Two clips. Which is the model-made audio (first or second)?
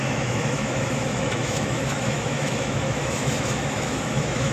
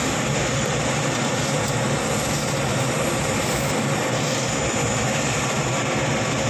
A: first